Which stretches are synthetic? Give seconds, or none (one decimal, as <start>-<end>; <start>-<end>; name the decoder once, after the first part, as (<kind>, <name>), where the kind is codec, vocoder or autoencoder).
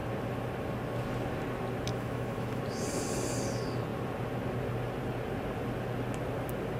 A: 1.9-2.6 (autoencoder, DAC-VAE)